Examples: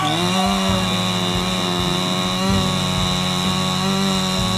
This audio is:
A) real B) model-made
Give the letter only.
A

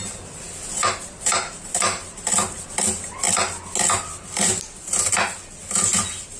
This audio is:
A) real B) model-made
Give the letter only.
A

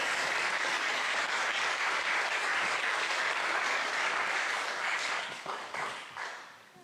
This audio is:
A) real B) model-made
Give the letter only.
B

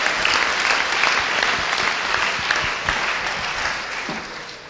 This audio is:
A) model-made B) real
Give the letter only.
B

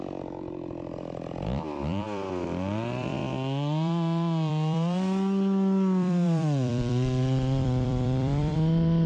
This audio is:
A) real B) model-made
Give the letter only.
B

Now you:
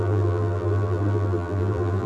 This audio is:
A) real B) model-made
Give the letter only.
B